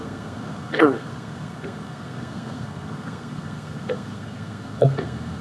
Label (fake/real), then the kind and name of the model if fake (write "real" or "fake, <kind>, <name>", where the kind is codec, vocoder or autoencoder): fake, codec, SNAC